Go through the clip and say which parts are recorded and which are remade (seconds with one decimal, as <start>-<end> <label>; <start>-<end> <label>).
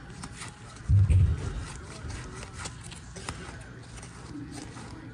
0.0-5.1 recorded